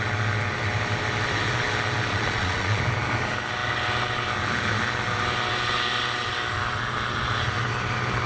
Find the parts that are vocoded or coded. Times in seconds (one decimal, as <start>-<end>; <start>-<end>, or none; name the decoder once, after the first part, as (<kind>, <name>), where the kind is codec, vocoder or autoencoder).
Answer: 2.1-2.8 (vocoder, Vocos)

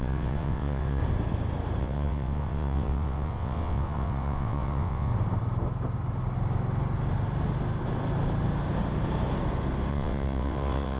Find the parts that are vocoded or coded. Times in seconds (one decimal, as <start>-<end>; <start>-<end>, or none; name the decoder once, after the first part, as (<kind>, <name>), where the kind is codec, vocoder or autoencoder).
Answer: 0.0-1.0 (vocoder, WaveNeXt); 1.8-5.1; 9.9-11.0

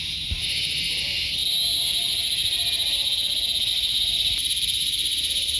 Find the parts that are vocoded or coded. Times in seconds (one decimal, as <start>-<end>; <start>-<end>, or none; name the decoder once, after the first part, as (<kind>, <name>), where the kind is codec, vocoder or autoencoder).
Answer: 0.0-1.4 (vocoder, BigVGAN v2); 3.7-5.6